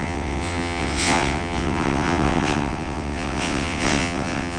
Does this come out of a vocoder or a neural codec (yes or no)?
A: yes